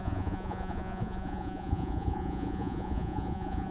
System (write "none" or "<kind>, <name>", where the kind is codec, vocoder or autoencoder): vocoder, Vocos